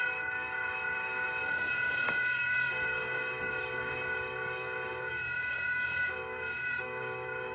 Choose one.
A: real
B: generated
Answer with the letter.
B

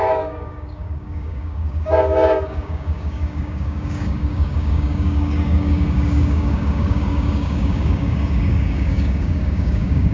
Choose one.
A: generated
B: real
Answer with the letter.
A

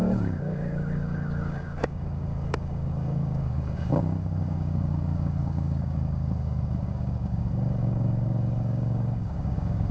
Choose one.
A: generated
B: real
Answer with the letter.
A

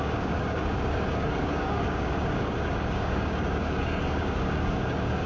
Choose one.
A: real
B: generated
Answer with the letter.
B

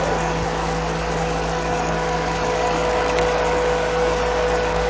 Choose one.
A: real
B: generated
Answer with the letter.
B